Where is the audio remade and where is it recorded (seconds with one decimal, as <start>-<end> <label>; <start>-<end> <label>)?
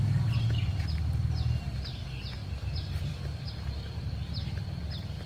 0.0-2.4 recorded; 2.4-3.5 remade; 3.5-5.3 recorded